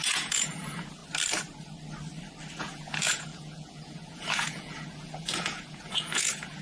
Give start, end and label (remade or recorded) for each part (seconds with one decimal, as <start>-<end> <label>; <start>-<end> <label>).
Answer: 0.0-1.0 remade; 1.0-2.6 recorded; 2.6-6.6 remade